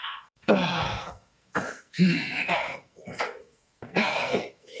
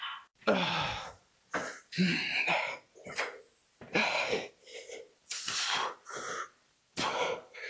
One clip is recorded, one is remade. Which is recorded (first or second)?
second